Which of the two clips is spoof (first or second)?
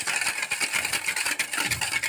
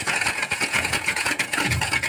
second